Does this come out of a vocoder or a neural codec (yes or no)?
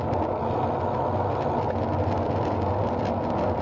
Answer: no